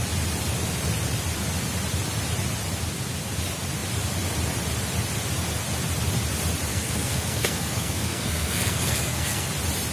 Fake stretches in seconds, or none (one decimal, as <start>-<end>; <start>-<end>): 6.7-9.5